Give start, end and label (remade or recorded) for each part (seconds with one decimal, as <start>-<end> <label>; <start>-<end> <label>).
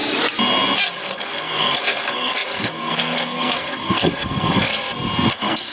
0.0-1.0 recorded; 1.0-4.7 remade; 4.7-5.3 recorded; 5.3-5.7 remade